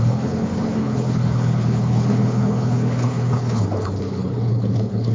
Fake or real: fake